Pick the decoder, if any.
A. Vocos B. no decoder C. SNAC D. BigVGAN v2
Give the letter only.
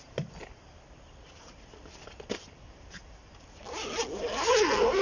B